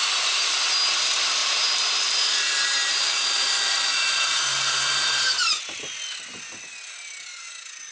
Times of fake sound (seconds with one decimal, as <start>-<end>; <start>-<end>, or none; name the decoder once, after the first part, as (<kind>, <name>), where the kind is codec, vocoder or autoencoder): 0.0-0.6 (vocoder, BigVGAN v2); 1.4-5.6